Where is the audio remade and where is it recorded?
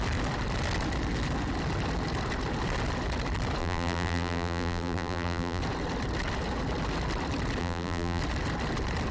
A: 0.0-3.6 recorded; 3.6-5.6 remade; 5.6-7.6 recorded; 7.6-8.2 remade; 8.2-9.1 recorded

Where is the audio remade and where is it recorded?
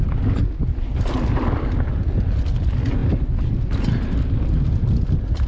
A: 0.0-5.5 recorded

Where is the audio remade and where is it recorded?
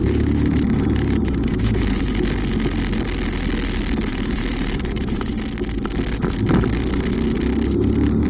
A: 0.0-2.1 remade; 2.1-4.1 recorded; 4.1-5.4 remade; 5.4-8.3 recorded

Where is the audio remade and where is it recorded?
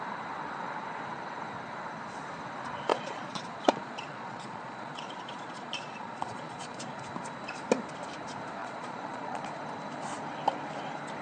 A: 0.0-2.9 recorded; 2.9-7.0 remade; 7.0-8.6 recorded; 8.6-9.4 remade; 9.4-11.2 recorded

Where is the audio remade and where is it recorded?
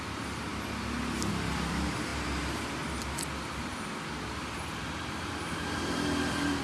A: 0.0-0.5 remade; 0.5-1.3 recorded; 1.3-2.1 remade; 2.1-5.1 recorded; 5.1-6.6 remade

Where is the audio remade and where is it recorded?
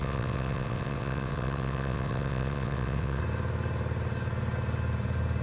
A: 0.0-3.2 remade; 3.2-5.4 recorded